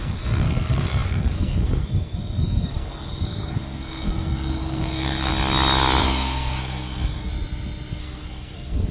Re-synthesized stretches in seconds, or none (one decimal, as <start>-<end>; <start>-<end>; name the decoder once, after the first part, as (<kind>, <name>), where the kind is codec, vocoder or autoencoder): 0.0-5.3 (codec, SNAC); 6.0-7.3; 8.0-8.9